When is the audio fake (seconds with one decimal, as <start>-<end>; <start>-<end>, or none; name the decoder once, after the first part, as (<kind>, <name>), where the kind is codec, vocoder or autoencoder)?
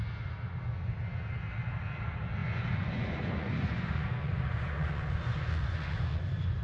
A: 2.4-6.6 (vocoder, Vocos)